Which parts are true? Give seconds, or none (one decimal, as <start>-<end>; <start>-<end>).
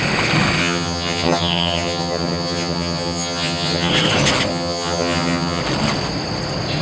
0.0-0.6; 3.9-4.5; 5.6-6.8